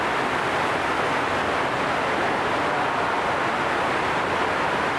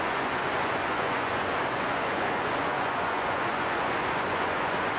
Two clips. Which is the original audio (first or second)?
first